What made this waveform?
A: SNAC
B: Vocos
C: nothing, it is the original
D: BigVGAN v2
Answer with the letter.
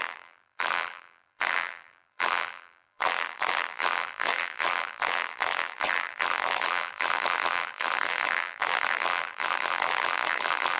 D